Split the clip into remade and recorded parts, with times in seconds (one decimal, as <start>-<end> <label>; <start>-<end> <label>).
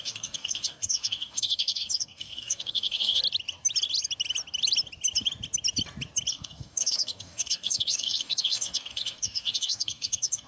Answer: 0.0-3.2 remade; 3.2-6.3 recorded; 6.3-10.5 remade